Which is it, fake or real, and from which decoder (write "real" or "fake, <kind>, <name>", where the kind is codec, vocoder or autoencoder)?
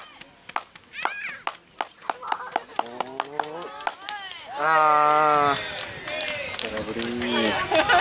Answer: real